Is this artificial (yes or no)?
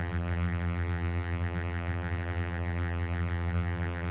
yes